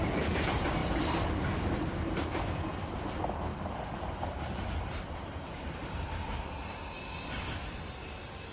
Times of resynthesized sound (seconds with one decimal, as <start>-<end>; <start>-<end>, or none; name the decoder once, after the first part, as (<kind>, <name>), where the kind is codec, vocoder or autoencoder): 0.8-1.7 (vocoder, BigVGAN v2); 3.5-6.5